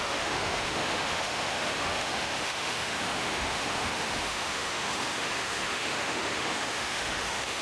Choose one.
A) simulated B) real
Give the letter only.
A